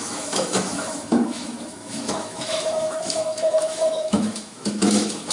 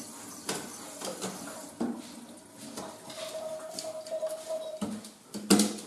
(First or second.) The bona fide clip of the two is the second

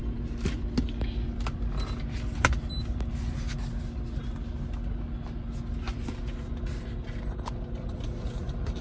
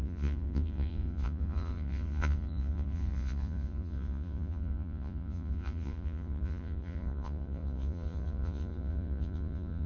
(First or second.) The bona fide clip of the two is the first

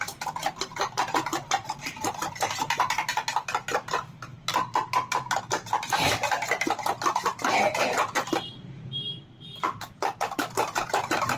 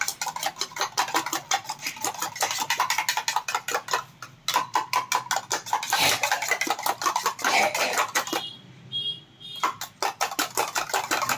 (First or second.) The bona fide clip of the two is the second